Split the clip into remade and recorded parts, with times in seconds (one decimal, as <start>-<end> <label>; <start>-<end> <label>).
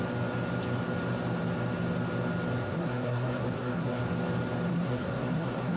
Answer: 0.0-2.7 recorded; 2.7-4.0 remade; 4.0-4.7 recorded; 4.7-5.8 remade